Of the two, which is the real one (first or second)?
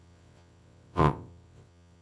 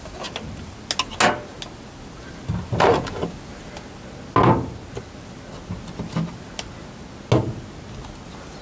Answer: second